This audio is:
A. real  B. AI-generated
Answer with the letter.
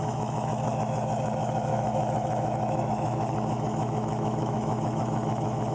B